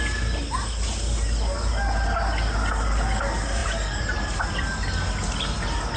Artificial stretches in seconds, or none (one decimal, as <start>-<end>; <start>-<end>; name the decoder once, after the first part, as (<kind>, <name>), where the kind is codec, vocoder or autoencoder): none